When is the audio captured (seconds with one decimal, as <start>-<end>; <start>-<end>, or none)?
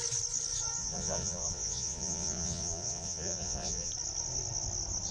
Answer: 0.0-0.8; 3.9-5.1